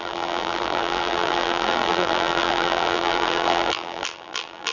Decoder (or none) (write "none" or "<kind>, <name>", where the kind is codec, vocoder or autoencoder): vocoder, BigVGAN v2